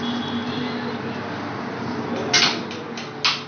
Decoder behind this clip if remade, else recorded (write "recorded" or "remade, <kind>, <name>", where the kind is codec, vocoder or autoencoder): recorded